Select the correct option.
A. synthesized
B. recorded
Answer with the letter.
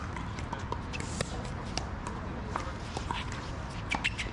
B